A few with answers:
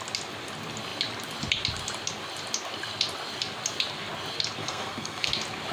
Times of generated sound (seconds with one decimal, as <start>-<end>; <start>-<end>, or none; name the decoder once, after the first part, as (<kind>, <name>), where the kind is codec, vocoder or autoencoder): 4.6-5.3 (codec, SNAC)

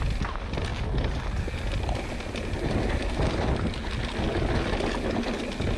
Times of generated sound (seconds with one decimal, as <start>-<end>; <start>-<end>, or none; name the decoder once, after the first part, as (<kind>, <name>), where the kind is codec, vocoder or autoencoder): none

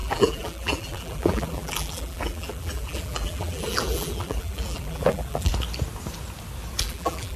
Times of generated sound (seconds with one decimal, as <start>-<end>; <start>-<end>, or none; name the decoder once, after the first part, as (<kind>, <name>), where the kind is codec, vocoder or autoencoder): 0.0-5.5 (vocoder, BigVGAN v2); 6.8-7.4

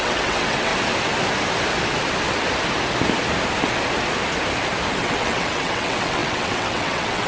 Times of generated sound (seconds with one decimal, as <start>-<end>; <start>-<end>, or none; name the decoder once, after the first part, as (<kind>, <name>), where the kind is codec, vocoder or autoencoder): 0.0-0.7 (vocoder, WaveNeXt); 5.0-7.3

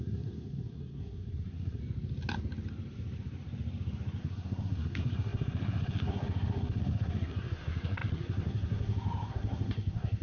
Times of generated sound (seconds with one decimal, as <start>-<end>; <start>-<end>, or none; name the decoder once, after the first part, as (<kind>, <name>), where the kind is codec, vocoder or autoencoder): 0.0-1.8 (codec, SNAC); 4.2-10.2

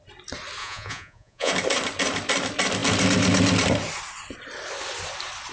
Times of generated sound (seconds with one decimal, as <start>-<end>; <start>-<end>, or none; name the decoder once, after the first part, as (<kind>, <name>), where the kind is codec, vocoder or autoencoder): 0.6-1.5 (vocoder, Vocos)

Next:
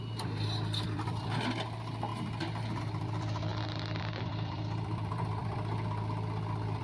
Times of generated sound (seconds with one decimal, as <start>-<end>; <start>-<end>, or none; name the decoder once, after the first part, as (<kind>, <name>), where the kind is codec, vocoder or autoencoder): 0.0-3.5 (vocoder, BigVGAN v2); 4.0-6.8